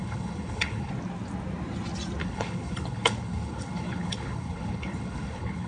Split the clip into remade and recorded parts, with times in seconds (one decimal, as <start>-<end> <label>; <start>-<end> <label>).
0.0-0.9 remade; 0.9-2.2 recorded; 2.2-5.7 remade